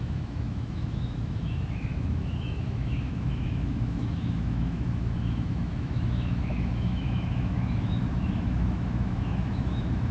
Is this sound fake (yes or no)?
yes